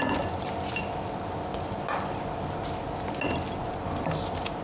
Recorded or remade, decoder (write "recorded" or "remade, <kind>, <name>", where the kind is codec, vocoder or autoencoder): recorded